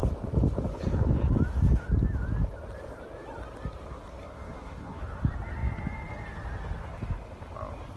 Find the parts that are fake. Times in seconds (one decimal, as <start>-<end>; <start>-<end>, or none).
4.2-5.0